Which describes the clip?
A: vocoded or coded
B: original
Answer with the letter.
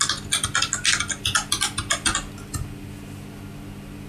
B